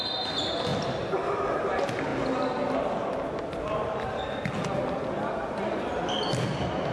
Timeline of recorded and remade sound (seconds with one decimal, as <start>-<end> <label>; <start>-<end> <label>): 0.0-6.9 recorded